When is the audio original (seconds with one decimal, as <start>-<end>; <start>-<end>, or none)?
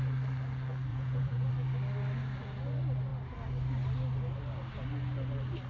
0.0-0.9; 1.5-5.7